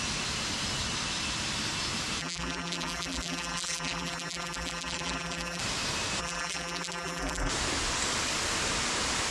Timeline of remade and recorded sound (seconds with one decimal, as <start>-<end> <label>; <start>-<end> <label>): 0.0-2.2 recorded; 2.2-5.6 remade; 5.6-6.2 recorded; 6.2-7.5 remade; 7.5-9.3 recorded